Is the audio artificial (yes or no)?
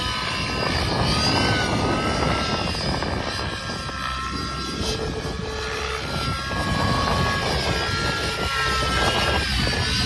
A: no